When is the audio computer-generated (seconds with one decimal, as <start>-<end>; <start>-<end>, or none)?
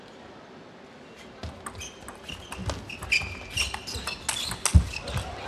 none